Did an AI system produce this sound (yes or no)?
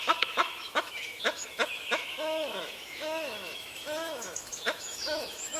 yes